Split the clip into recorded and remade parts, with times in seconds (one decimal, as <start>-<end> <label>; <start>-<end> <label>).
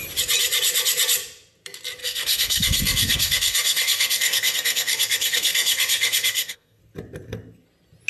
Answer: 0.0-2.0 recorded; 2.0-6.8 remade; 6.8-8.1 recorded